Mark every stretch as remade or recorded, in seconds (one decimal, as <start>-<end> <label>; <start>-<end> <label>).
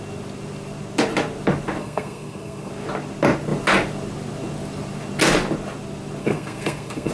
0.0-1.8 recorded; 1.8-2.7 remade; 2.7-6.2 recorded; 6.2-7.1 remade